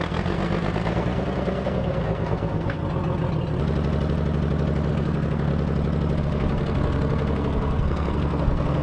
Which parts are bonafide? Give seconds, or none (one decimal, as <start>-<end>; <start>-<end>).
2.8-4.9; 5.5-6.2